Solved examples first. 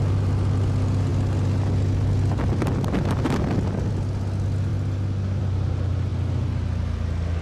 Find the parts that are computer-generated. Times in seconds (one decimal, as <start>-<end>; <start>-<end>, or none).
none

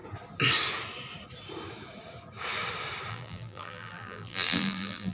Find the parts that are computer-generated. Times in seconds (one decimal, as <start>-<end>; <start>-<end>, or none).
3.1-5.1

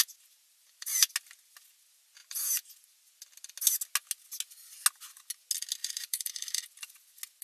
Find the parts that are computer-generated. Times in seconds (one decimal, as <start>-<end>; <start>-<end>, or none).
0.6-1.1; 2.2-2.7; 5.8-6.6